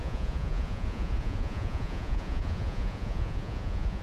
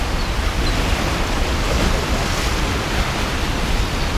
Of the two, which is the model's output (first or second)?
first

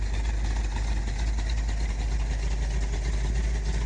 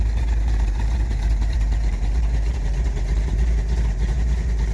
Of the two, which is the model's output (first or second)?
second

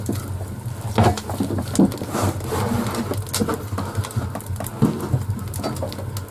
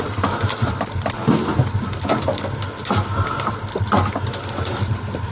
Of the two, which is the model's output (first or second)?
second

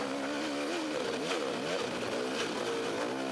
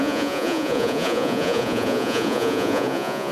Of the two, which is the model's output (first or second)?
second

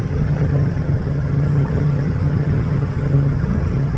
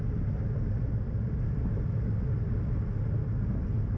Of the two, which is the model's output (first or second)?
first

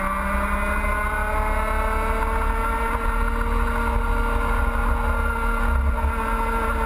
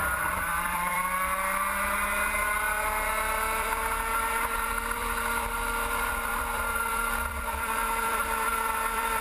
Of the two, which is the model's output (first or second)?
second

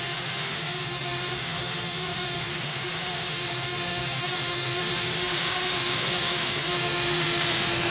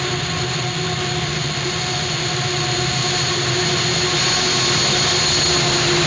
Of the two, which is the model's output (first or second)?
first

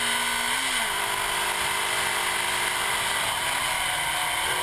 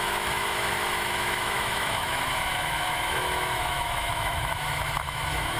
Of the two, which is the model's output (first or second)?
second